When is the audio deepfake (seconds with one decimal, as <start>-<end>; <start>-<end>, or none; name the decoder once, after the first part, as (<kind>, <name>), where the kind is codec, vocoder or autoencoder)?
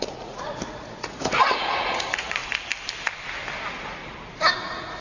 0.0-2.4 (vocoder, Vocos); 3.6-4.0; 4.5-5.0